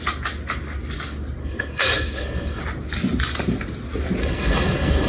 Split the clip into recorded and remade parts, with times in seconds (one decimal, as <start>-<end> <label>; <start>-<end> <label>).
0.0-1.4 recorded; 1.4-2.6 remade; 2.6-4.2 recorded; 4.2-5.1 remade